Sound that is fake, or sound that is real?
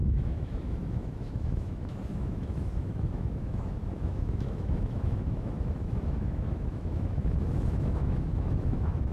fake